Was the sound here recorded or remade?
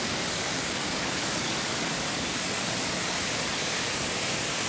remade